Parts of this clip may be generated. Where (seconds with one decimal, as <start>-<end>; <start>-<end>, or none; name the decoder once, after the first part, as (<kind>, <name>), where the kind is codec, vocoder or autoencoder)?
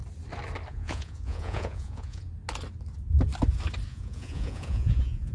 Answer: 0.7-2.3 (vocoder, Vocos); 3.9-5.3